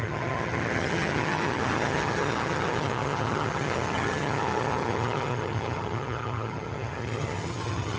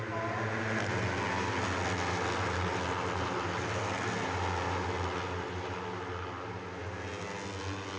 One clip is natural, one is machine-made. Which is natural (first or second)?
second